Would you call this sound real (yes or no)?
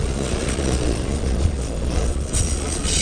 no